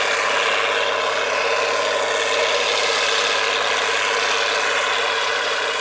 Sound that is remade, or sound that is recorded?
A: recorded